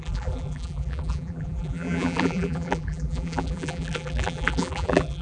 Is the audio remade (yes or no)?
yes